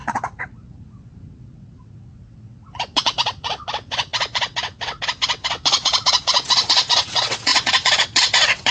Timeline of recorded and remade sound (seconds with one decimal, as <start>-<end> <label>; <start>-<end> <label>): 0.0-8.7 remade